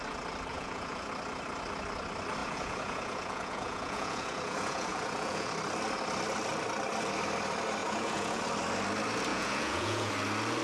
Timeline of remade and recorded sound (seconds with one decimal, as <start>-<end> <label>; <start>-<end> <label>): 0.0-0.5 recorded; 0.5-1.1 remade; 1.1-2.4 recorded; 2.4-5.5 remade; 5.5-7.8 recorded; 7.8-8.4 remade; 8.4-9.3 recorded; 9.3-10.1 remade; 10.1-10.6 recorded